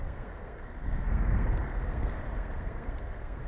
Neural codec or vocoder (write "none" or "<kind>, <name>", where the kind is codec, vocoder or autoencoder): codec, SNAC